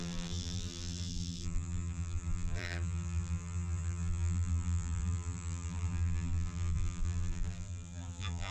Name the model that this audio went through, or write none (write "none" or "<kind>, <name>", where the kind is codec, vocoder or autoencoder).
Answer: vocoder, BigVGAN v2